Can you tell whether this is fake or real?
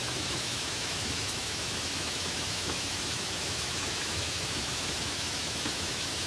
fake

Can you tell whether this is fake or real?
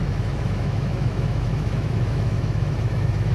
fake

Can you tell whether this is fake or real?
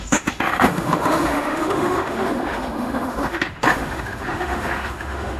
fake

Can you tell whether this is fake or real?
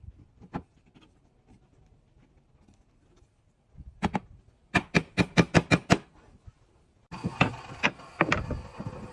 real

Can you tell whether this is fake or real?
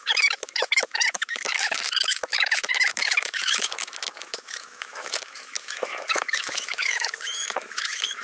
fake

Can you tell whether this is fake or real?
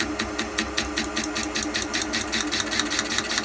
real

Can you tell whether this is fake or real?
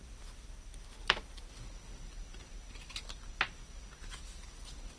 real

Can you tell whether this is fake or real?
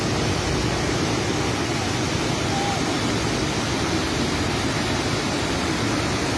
real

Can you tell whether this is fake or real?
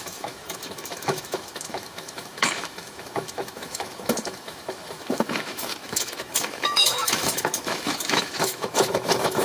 fake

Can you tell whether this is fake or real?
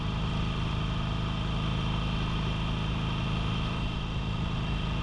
real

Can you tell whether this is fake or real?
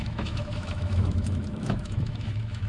fake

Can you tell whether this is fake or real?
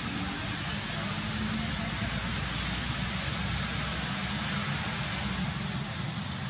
real